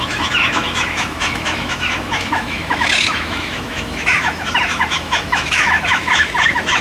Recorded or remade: remade